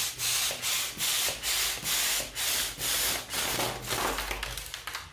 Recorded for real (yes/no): yes